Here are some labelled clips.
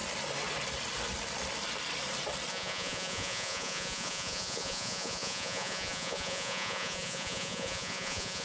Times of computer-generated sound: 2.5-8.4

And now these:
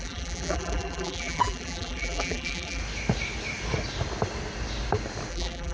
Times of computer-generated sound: 0.0-2.8; 5.3-5.7

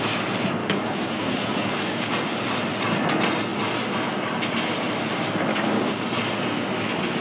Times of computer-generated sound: 0.6-2.1; 5.5-6.0

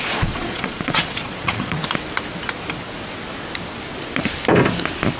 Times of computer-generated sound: 0.0-1.8

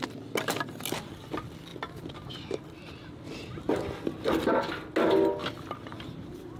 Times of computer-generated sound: none

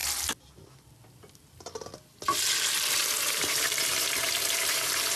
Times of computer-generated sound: 3.1-5.2

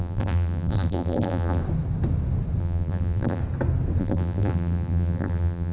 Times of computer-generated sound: 0.0-1.6; 2.6-3.4; 4.0-5.7